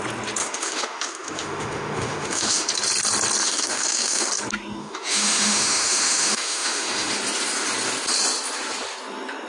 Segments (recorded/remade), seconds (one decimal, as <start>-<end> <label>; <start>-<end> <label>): 0.0-0.4 recorded; 0.4-2.7 remade; 2.7-3.4 recorded; 3.4-4.3 remade; 4.3-4.8 recorded; 4.8-7.1 remade; 7.1-9.5 recorded